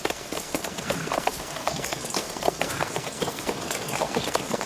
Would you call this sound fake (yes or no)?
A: yes